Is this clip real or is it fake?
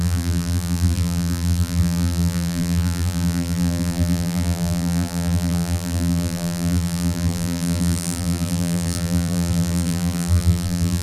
fake